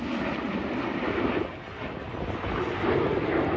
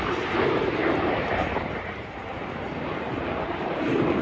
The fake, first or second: second